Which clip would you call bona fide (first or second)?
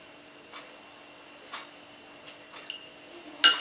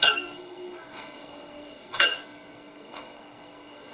first